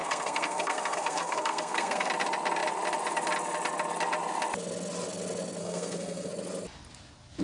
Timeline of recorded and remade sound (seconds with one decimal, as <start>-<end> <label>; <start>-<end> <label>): 0.0-2.1 remade; 2.1-5.6 recorded; 5.6-6.3 remade; 6.3-7.4 recorded